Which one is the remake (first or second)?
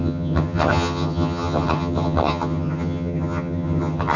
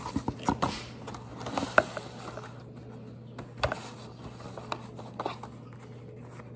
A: first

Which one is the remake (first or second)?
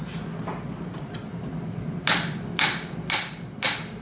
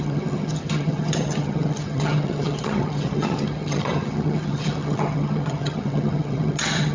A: second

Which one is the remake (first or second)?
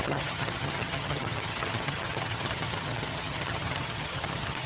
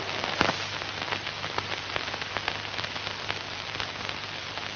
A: first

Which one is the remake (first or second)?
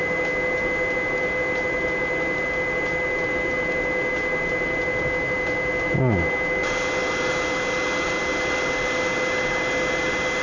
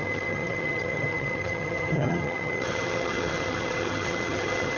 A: second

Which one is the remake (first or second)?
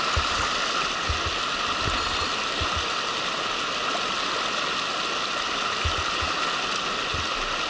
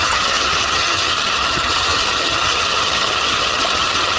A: second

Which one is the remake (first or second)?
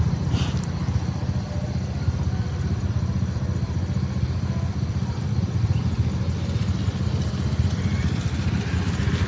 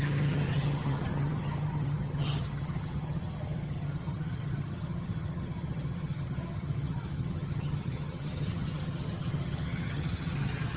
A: second